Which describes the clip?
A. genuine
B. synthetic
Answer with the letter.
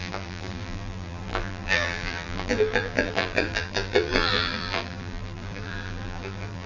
B